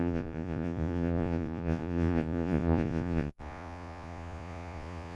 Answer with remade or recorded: remade